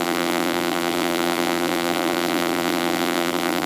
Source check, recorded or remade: remade